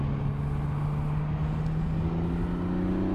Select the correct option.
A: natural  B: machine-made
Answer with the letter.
A